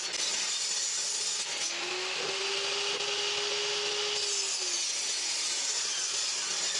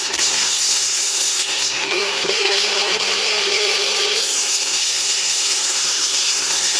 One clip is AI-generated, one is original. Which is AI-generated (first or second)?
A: second